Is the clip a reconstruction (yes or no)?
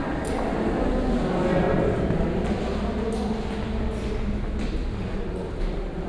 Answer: no